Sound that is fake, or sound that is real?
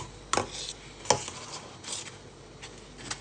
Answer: real